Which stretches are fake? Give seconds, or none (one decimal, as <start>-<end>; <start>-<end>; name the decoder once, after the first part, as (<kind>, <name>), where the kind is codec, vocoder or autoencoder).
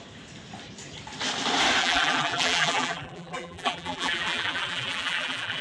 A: 1.8-5.6 (vocoder, BigVGAN v2)